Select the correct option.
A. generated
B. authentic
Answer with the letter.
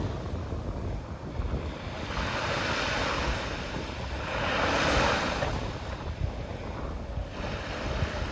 B